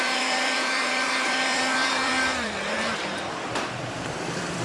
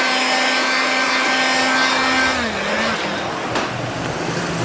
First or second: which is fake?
first